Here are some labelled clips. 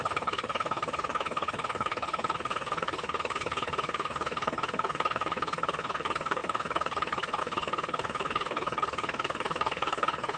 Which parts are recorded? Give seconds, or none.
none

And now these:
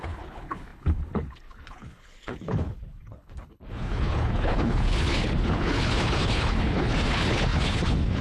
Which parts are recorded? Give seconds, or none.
none

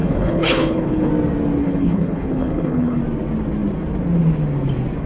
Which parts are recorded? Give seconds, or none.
1.1-1.6; 3.0-5.1

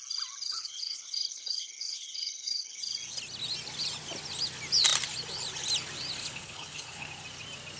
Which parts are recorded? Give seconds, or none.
0.0-0.5; 2.8-6.2; 7.1-7.8

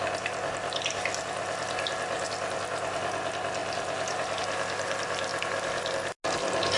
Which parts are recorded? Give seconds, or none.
0.0-6.8

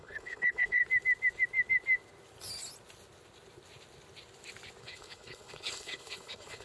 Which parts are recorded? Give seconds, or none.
0.8-4.8

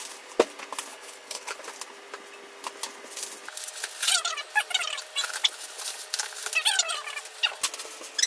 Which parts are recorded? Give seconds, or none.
0.0-0.9; 1.6-8.3